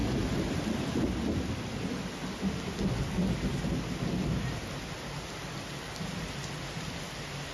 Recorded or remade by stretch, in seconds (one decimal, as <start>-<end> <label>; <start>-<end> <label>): 0.0-7.5 recorded